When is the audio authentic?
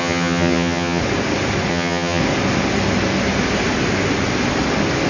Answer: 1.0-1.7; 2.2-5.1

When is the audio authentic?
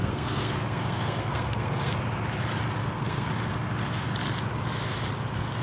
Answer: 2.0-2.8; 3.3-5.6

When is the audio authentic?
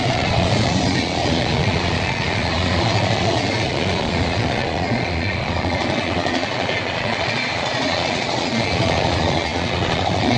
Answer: none